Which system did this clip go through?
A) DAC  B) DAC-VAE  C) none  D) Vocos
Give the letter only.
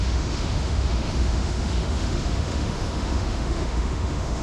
B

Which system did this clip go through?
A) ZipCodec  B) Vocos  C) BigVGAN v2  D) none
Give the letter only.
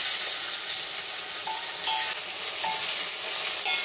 D